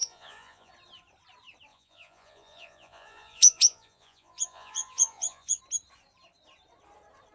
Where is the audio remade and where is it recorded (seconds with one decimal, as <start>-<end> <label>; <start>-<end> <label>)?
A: 0.0-0.7 remade; 0.7-1.7 recorded; 1.7-5.6 remade; 5.6-7.3 recorded